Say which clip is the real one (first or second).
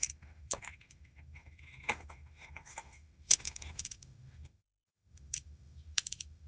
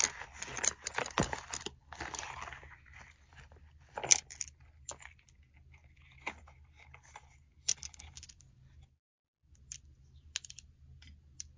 second